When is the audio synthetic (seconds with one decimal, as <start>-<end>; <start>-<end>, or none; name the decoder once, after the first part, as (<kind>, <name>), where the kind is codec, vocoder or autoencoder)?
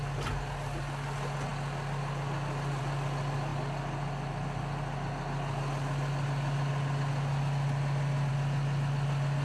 none